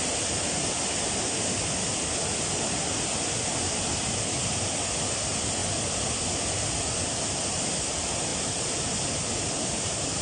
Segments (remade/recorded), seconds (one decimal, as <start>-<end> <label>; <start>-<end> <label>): 0.0-10.2 recorded